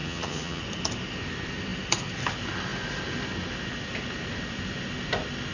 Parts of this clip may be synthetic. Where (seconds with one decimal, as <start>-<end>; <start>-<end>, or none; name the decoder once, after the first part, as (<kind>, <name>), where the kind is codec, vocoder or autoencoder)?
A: 0.0-0.6 (vocoder, HiFi-GAN)